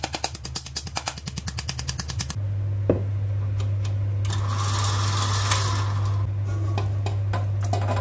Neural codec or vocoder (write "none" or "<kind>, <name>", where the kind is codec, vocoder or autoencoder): none